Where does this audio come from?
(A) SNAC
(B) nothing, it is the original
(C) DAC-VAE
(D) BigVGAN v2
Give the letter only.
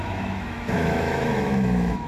C